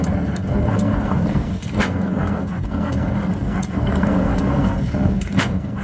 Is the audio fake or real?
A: fake